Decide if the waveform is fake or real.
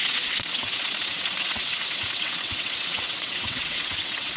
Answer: fake